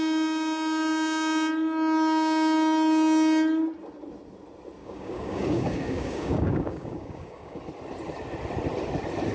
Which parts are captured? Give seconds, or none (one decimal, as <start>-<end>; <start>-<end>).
0.0-4.8; 7.6-9.3